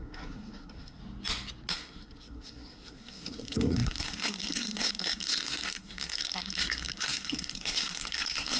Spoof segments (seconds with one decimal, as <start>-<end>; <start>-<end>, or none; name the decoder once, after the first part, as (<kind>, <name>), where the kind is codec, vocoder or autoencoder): 0.0-1.0 (codec, SNAC); 1.7-8.6